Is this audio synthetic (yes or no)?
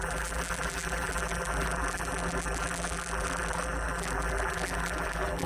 yes